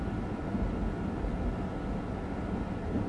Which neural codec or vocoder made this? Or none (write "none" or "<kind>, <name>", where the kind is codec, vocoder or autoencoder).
none